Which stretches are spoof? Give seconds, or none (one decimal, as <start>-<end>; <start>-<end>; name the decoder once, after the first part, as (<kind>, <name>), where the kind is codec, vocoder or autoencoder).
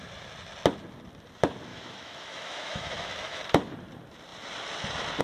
1.7-3.4 (autoencoder, DAC-VAE)